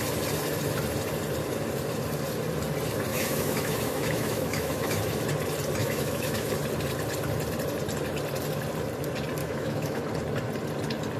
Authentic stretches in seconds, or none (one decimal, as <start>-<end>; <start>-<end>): 0.0-3.1; 5.0-5.8; 6.5-9.4; 10.0-11.2